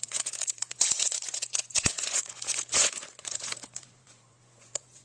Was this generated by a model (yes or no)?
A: yes